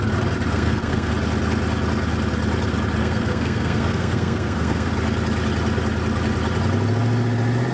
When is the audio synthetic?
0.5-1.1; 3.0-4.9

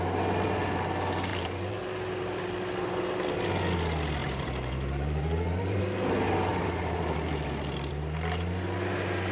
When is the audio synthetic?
1.3-1.9; 4.2-5.8; 6.5-7.9